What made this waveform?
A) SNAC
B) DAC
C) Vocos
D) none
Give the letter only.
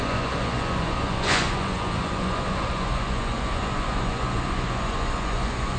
C